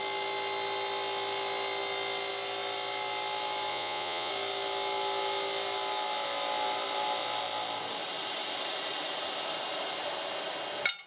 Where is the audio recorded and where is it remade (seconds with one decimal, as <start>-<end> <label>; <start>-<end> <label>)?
0.0-3.7 recorded; 3.7-4.3 remade; 4.3-11.1 recorded